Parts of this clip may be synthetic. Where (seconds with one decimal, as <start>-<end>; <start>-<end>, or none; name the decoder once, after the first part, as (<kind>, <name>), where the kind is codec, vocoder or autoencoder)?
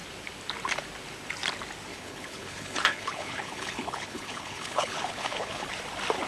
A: 1.9-5.7 (codec, HILCodec)